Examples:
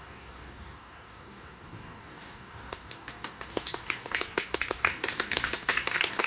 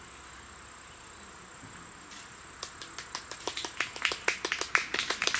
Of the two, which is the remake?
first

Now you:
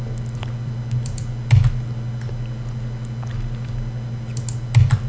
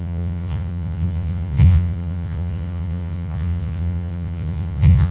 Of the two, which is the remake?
second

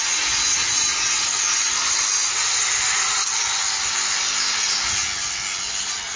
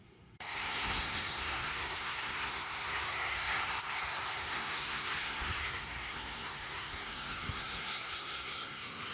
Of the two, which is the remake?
second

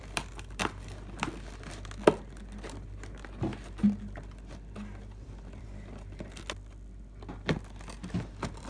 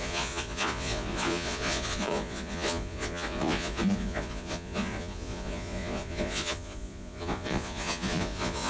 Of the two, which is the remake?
second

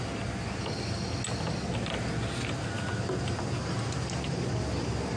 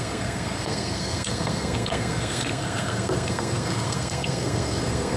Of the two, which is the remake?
second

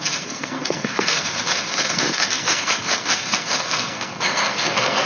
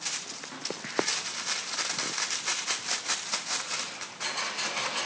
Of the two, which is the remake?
first